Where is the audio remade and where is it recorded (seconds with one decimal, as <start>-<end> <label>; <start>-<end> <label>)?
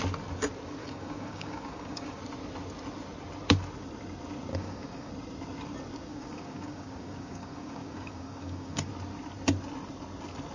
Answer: 0.0-0.8 recorded; 0.8-2.2 remade; 2.2-4.5 recorded; 4.5-5.1 remade; 5.1-6.1 recorded; 6.1-8.9 remade; 8.9-10.5 recorded